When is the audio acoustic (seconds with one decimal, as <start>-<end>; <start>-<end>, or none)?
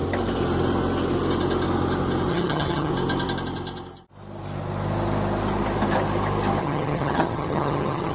0.0-2.3; 2.9-6.6